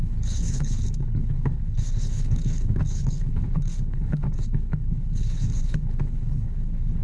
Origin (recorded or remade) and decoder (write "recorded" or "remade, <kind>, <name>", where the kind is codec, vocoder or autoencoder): remade, codec, HILCodec